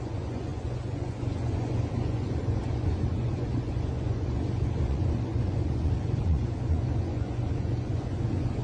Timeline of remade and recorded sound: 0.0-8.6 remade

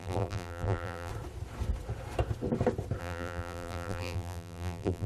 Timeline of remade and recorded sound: 0.0-1.1 remade; 1.1-3.0 recorded; 3.0-5.1 remade

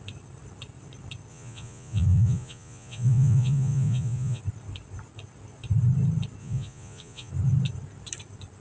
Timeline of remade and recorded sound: 0.0-1.3 recorded; 1.3-4.4 remade; 4.4-6.4 recorded; 6.4-7.3 remade; 7.3-8.6 recorded

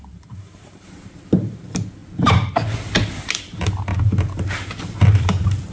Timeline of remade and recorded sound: 0.0-2.0 remade; 2.0-3.2 recorded; 3.2-3.9 remade; 3.9-4.5 recorded; 4.5-5.7 remade

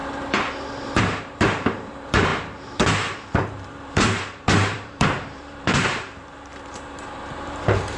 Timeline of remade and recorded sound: 0.0-1.0 recorded; 1.0-8.0 remade

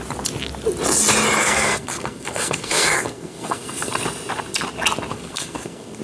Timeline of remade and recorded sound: 0.0-1.4 recorded; 1.4-3.9 remade; 3.9-5.1 recorded; 5.1-6.0 remade

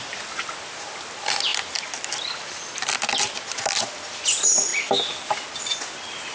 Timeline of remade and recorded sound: 0.0-6.3 recorded

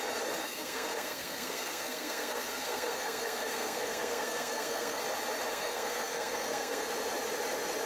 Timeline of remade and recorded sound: 0.0-0.4 recorded; 0.4-5.0 remade; 5.0-5.5 recorded; 5.5-6.9 remade; 6.9-7.9 recorded